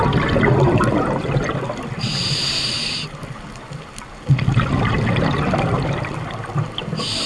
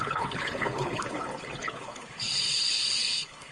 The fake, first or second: second